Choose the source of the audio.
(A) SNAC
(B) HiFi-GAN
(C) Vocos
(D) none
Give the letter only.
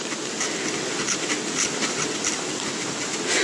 D